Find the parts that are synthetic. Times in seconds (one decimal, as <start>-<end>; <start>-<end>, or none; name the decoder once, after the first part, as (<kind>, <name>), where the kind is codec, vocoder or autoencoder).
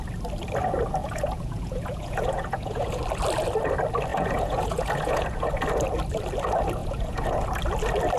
1.0-3.0 (vocoder, Vocos); 4.1-5.5; 6.8-7.4